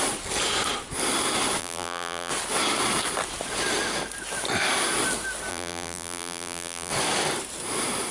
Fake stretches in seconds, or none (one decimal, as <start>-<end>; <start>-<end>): 1.6-2.3; 5.5-6.9